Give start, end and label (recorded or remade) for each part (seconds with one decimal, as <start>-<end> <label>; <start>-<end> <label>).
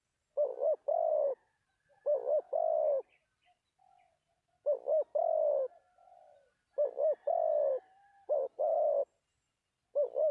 0.0-10.3 recorded